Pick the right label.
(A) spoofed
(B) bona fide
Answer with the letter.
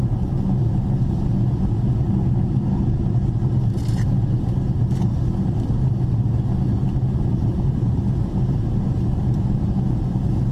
B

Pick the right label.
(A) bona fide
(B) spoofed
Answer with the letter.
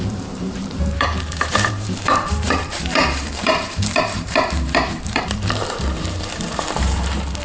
B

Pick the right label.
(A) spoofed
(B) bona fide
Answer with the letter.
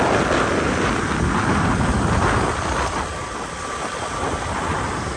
B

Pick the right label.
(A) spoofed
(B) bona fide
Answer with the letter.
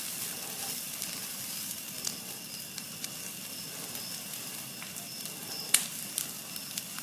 B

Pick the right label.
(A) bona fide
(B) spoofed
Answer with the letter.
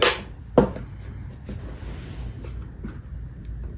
A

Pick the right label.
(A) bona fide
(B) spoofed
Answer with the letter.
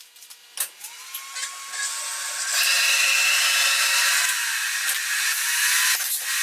A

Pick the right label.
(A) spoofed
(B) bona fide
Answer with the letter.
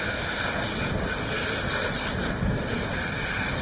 B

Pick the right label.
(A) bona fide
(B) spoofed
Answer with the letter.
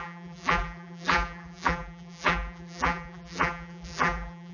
B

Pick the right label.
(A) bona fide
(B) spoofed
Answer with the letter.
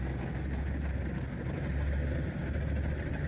A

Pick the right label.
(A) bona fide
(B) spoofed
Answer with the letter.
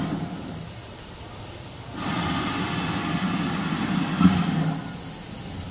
A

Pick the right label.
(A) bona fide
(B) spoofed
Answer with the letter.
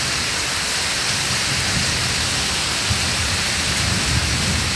A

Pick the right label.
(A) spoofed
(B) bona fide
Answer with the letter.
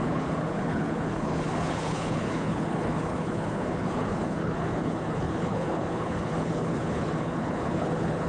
A